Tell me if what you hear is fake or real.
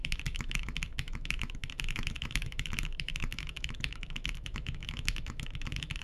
fake